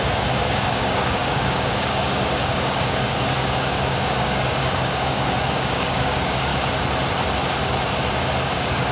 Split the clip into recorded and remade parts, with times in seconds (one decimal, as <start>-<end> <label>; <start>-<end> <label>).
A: 0.0-6.5 remade; 6.5-8.4 recorded; 8.4-8.9 remade